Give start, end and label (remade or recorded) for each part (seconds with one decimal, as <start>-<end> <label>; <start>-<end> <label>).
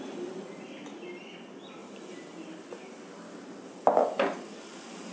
0.0-5.1 recorded